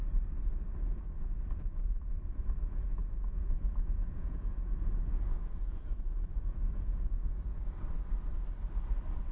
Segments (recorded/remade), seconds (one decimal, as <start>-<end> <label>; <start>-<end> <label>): 0.0-3.0 recorded; 3.0-7.6 remade; 7.6-9.3 recorded